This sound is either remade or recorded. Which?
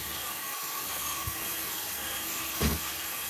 remade